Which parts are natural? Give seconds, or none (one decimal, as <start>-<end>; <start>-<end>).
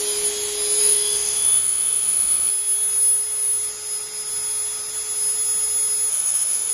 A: 0.0-0.8; 2.5-6.1